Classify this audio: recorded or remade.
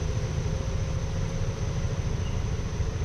recorded